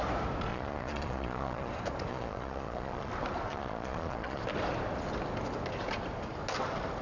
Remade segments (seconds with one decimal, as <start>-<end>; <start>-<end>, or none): 0.5-1.7; 2.1-3.1; 3.5-4.4